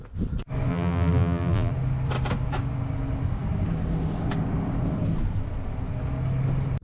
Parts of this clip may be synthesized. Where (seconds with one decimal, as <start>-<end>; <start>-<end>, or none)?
0.7-1.7